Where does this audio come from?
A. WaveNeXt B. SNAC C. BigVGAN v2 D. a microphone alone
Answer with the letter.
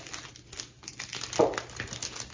D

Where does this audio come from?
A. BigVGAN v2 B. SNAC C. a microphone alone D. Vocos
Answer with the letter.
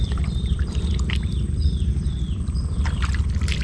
A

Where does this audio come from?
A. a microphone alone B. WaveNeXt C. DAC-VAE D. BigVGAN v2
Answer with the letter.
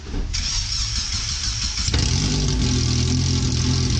A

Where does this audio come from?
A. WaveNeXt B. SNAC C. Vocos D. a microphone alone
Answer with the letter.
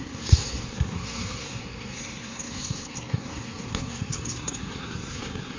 B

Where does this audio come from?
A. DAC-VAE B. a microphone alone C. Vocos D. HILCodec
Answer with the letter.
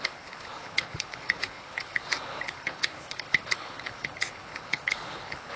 D